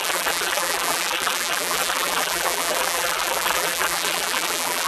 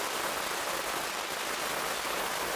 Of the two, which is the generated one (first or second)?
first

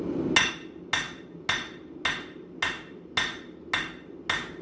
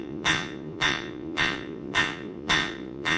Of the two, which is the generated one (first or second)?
second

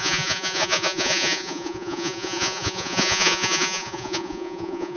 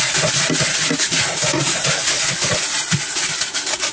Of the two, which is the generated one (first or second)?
first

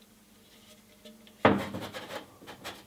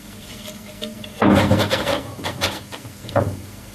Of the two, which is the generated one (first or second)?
second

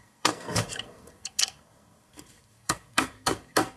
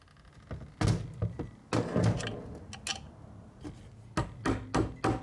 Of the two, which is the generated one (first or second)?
first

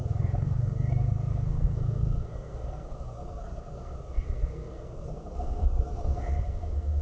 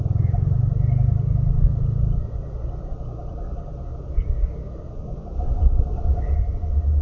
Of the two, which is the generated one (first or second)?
first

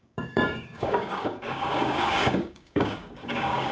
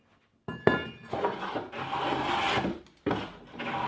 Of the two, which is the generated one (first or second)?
first